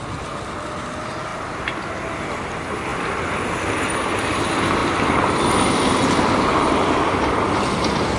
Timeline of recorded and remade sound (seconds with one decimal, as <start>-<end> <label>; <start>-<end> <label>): 0.0-4.8 recorded; 4.8-6.4 remade; 6.4-8.2 recorded